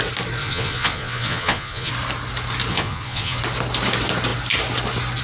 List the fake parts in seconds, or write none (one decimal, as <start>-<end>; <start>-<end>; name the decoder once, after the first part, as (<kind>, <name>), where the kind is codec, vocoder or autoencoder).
0.4-1.9 (vocoder, Vocos); 2.7-3.4